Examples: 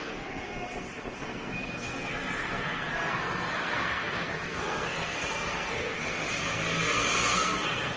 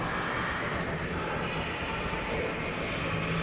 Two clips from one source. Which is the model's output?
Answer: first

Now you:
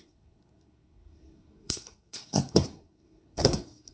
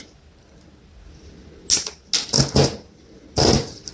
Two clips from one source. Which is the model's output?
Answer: first